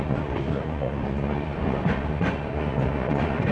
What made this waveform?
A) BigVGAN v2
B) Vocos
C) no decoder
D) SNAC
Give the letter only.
B